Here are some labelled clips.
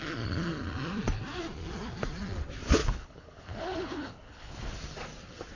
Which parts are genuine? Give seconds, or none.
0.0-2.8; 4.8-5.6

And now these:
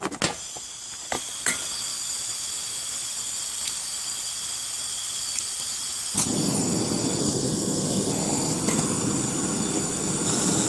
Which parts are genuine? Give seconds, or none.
0.0-7.2; 8.1-10.7

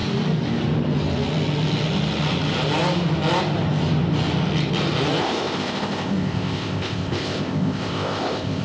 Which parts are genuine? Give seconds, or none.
0.0-5.2

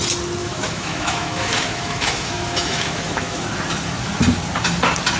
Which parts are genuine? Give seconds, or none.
0.0-0.4; 3.5-5.2

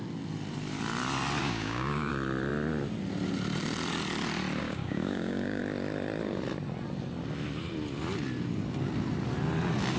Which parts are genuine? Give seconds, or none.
0.0-1.4; 2.1-4.6; 5.6-10.0